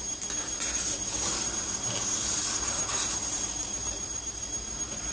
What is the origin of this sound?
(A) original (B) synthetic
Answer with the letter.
A